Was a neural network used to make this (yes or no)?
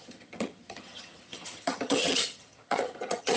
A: yes